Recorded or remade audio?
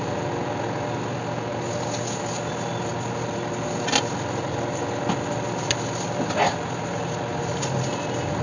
recorded